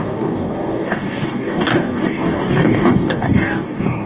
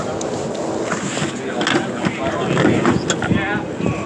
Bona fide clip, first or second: second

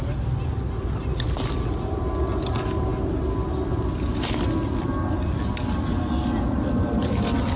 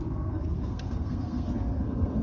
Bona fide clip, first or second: first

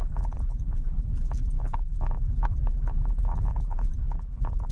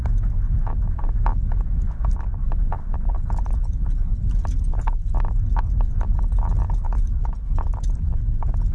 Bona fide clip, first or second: second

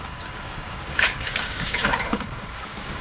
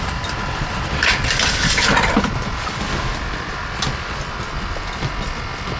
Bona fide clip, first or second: second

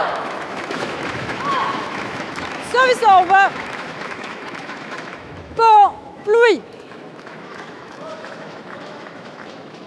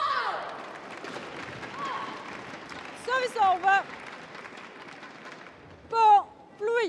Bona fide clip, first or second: second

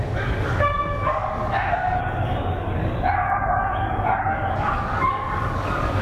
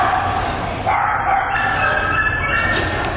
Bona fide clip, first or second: second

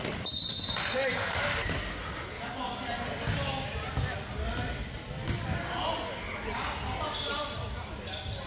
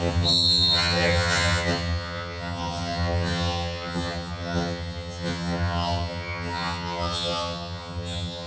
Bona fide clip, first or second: first